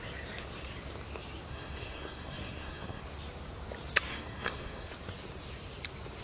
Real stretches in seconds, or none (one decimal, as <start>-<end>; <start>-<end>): 0.0-1.5; 3.0-4.1; 4.9-6.2